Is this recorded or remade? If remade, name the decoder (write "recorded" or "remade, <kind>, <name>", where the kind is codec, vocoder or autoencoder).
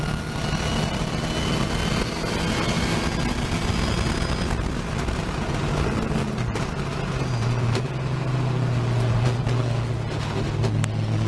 recorded